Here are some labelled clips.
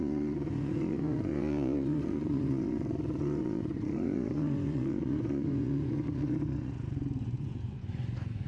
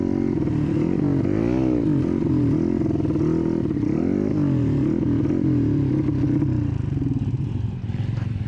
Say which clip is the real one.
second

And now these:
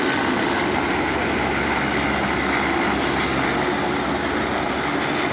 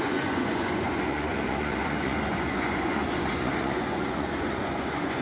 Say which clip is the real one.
first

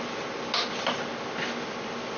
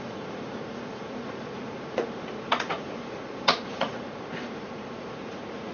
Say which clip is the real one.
first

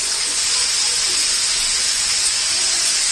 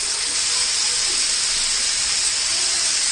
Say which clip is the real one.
second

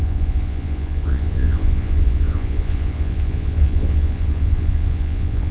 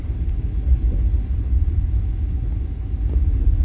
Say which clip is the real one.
second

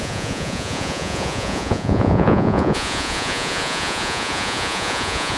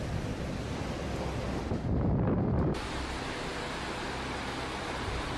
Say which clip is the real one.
second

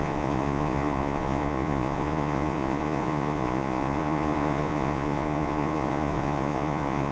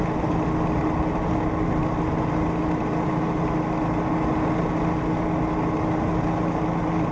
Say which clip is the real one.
second